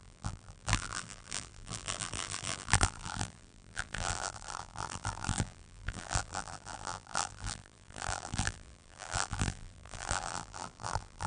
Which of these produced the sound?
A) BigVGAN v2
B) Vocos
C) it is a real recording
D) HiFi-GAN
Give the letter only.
A